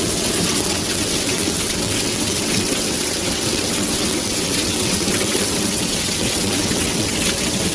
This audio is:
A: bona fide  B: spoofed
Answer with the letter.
B